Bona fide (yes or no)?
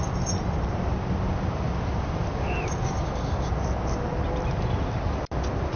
yes